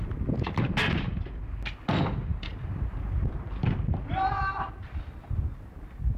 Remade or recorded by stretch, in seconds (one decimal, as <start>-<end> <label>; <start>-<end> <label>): 0.0-2.3 recorded; 2.3-4.1 remade; 4.1-6.2 recorded